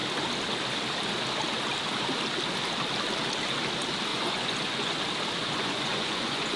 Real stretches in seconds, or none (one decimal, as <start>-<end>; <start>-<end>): 0.0-4.1; 5.0-5.4